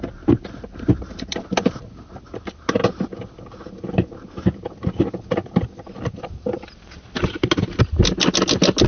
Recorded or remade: recorded